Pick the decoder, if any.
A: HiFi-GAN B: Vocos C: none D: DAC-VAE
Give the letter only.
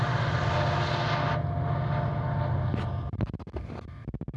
C